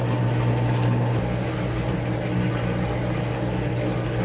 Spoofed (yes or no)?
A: no